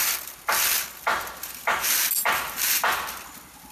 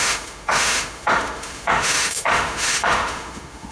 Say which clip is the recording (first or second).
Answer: first